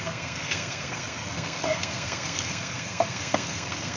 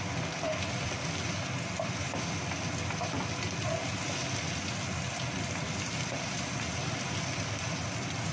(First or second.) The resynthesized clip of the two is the first